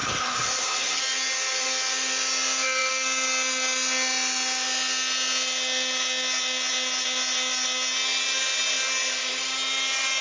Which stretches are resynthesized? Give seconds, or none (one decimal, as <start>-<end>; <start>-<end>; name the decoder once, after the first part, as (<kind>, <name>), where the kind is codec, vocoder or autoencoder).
0.0-1.0 (codec, HILCodec)